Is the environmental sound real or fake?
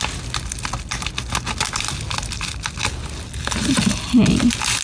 real